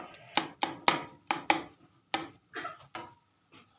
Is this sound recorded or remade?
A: recorded